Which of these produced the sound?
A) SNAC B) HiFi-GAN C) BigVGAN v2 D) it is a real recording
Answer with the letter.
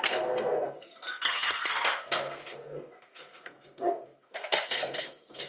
A